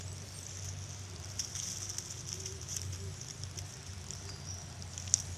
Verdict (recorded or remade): recorded